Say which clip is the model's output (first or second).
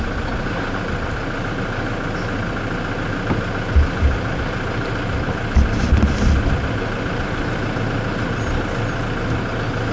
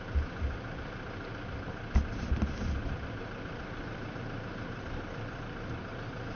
second